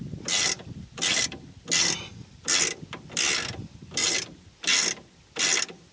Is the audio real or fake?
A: real